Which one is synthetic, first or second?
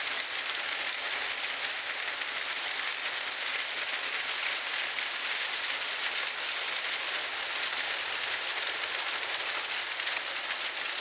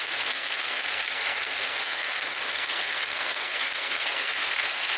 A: second